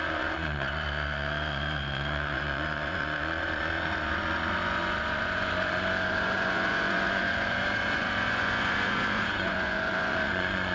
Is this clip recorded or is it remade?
remade